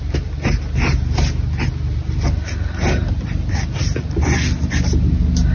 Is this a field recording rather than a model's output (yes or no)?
yes